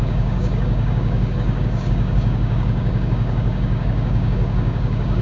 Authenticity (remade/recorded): remade